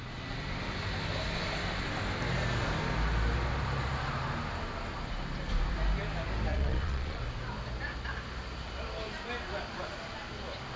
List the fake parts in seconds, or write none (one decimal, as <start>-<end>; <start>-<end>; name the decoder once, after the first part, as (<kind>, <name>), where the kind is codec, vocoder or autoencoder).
6.5-7.2 (vocoder, Vocos)